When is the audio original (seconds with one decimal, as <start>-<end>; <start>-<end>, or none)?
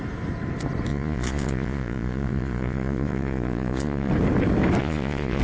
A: 0.0-0.9; 4.1-4.8